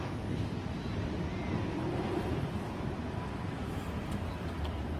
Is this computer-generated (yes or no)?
no